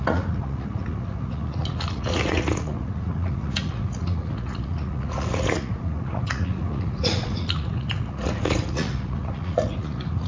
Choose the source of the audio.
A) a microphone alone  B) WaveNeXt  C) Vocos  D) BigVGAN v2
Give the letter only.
C